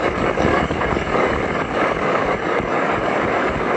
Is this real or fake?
fake